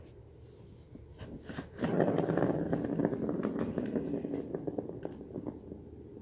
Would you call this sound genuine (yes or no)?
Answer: yes